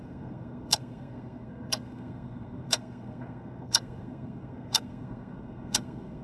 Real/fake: fake